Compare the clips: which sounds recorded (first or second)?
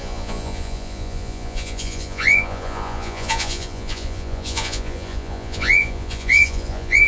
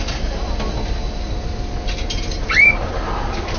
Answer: second